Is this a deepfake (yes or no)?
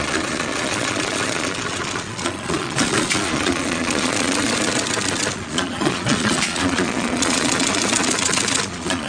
yes